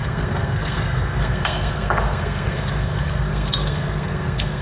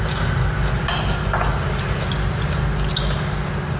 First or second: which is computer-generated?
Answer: first